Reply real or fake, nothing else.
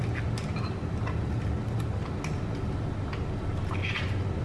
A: real